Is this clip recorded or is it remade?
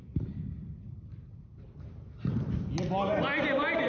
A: recorded